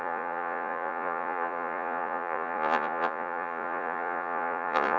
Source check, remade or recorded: remade